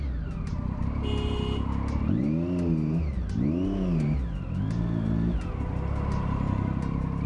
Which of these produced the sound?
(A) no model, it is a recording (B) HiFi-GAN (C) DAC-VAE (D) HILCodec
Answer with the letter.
A